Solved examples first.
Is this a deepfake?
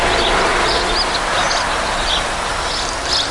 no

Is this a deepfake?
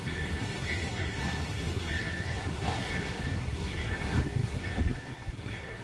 yes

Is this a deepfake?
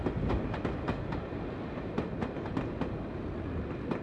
no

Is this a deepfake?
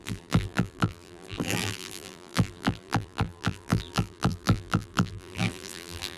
yes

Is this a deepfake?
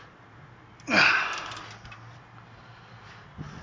no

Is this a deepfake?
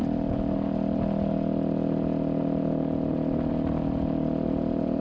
no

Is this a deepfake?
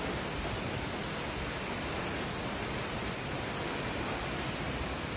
no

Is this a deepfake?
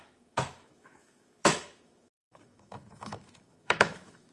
yes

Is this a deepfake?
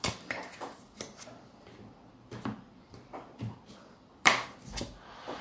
yes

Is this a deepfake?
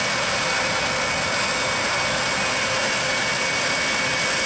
no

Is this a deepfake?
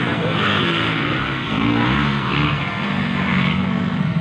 yes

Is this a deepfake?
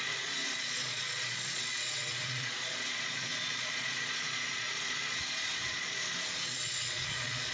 yes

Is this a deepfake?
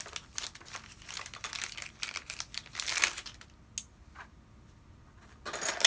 no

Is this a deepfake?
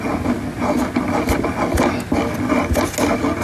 no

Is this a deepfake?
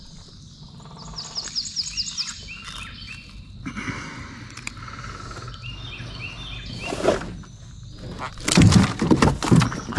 no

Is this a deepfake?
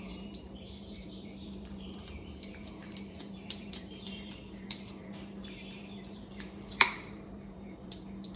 yes